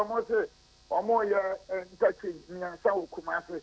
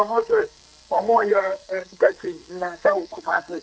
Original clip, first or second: first